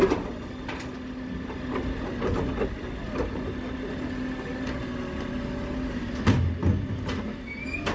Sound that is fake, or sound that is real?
real